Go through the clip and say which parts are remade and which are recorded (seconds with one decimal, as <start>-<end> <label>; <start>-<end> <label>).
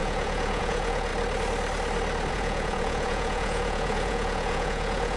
0.0-1.1 remade; 1.1-2.3 recorded; 2.3-5.2 remade